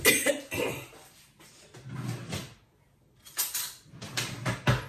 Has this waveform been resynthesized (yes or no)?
no